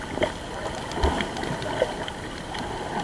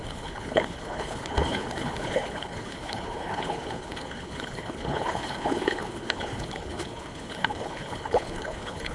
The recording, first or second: first